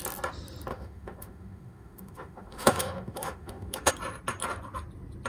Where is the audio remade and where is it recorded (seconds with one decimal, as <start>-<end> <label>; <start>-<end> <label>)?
0.0-0.7 recorded; 0.7-3.9 remade; 3.9-5.3 recorded